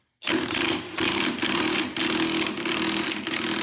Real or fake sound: real